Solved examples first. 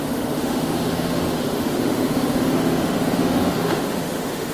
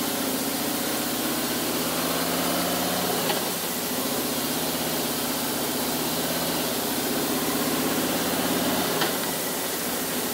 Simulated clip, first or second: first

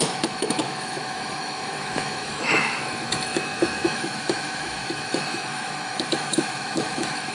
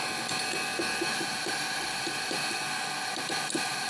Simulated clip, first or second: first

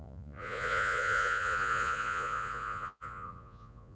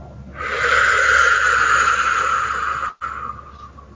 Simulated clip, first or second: first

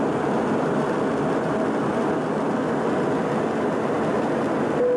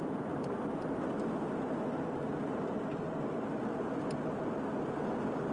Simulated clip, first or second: second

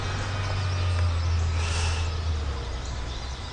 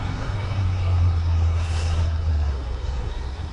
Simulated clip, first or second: second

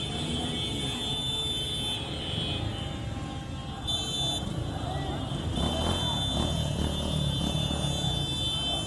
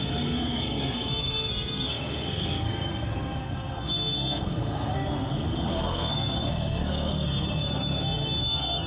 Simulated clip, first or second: second